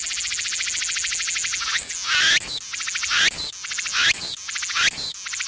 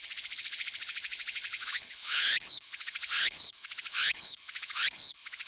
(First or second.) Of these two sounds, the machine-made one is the second